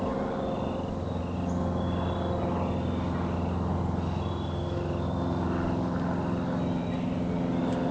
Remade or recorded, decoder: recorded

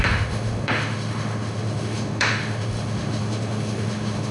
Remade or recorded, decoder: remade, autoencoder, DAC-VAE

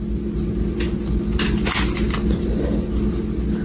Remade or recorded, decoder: recorded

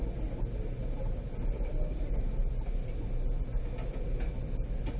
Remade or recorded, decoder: recorded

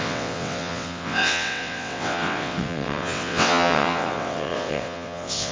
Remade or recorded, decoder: remade, vocoder, WaveNeXt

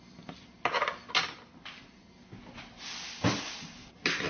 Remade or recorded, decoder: recorded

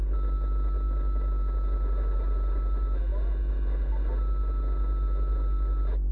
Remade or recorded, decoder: recorded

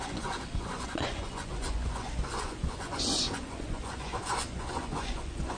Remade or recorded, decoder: remade, vocoder, Vocos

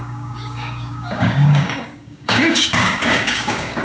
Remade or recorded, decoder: remade, codec, DAC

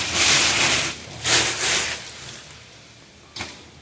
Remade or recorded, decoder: remade, vocoder, BigVGAN v2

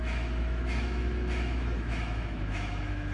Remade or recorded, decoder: remade, autoencoder, DAC-VAE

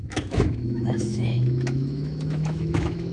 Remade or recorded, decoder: remade, autoencoder, DAC-VAE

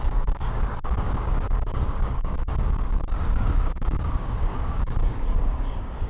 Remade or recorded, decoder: remade, codec, DAC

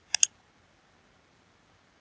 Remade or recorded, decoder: recorded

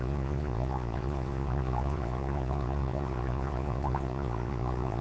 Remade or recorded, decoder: remade, vocoder, Vocos